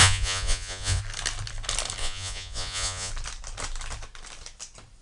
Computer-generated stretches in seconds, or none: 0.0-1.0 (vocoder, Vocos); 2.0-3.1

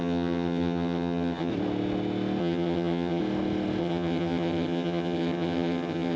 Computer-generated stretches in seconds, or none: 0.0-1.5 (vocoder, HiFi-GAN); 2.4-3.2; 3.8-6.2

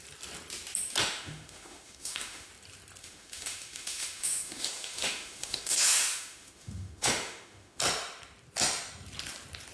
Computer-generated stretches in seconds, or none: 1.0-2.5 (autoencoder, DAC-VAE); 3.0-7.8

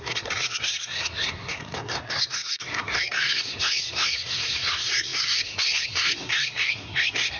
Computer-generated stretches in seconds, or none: 0.0-7.4 (codec, SNAC)

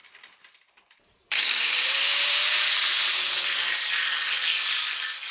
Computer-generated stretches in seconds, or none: 0.0-3.2 (vocoder, BigVGAN v2)